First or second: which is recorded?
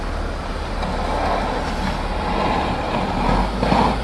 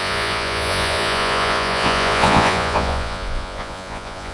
first